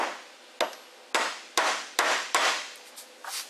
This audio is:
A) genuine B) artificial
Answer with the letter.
A